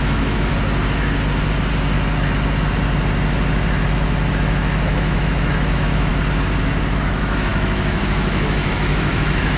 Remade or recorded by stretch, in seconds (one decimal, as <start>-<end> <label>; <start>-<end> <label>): 0.0-0.5 remade; 0.5-4.3 recorded; 4.3-6.1 remade; 6.1-7.0 recorded; 7.0-9.6 remade